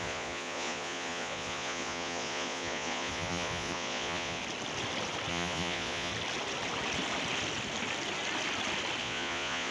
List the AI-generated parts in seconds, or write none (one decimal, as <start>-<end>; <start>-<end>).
0.0-4.4; 5.3-6.1; 9.0-9.7